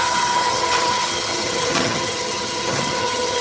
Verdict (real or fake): fake